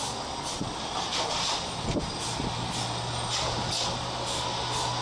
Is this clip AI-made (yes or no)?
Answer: no